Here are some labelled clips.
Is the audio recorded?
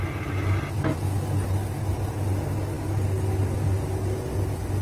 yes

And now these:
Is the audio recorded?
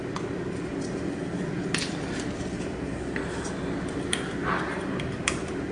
yes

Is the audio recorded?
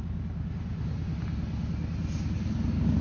yes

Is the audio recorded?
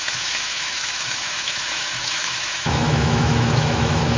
no